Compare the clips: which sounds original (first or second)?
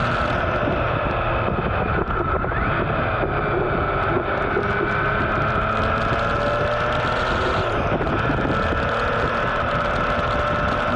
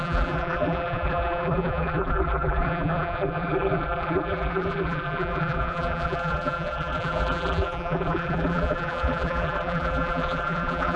first